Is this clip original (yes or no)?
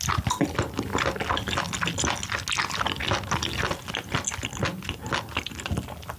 yes